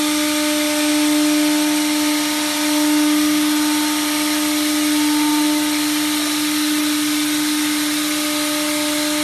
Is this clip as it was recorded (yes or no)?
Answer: yes